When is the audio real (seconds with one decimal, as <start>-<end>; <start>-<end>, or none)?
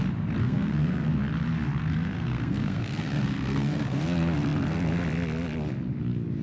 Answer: 0.0-0.4; 1.1-1.8; 4.0-6.4